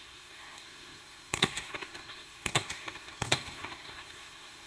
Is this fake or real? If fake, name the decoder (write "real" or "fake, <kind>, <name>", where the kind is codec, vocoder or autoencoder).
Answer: fake, codec, SNAC